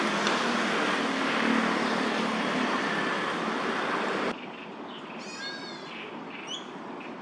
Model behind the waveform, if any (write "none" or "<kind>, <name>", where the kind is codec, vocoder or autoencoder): none